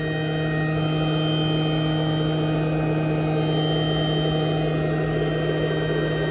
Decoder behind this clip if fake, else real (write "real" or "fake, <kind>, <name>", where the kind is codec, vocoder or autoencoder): real